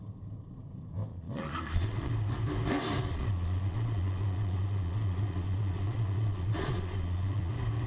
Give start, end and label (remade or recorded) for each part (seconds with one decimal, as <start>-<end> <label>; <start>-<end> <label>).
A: 0.0-1.1 recorded; 1.1-2.1 remade; 2.1-3.1 recorded; 3.1-7.5 remade; 7.5-7.9 recorded